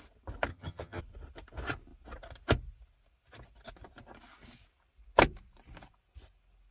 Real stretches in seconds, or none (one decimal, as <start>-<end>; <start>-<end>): 0.0-0.5; 1.0-6.7